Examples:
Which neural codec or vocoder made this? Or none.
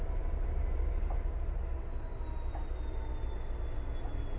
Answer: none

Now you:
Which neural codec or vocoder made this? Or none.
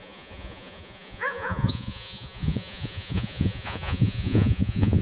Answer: vocoder, Vocos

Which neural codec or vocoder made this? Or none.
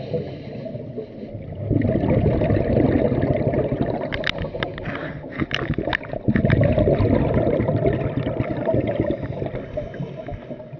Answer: none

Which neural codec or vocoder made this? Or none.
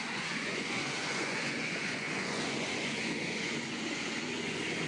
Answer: vocoder, Vocos